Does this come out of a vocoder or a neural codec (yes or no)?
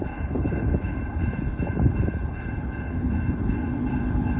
yes